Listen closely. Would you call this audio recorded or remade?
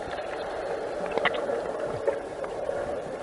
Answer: remade